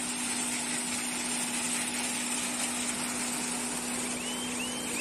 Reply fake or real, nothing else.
real